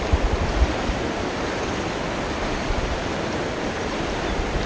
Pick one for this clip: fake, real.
real